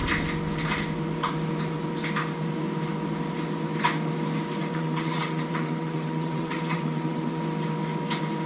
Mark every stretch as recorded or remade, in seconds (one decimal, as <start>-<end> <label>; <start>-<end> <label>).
0.0-4.7 recorded; 4.7-7.4 remade; 7.4-8.5 recorded